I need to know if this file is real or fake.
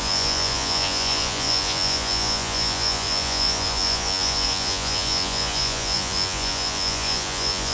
fake